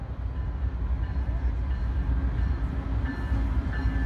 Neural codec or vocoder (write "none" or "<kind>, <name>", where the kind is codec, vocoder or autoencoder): none